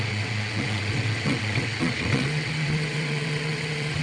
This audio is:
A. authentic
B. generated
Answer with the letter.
B